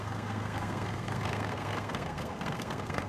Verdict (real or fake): fake